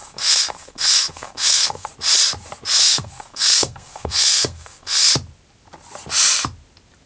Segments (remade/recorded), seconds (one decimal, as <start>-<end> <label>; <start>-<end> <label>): 0.0-1.9 remade; 1.9-2.8 recorded; 2.8-5.1 remade; 5.1-7.1 recorded